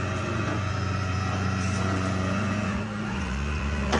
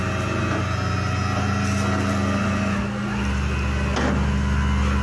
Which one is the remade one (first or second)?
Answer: first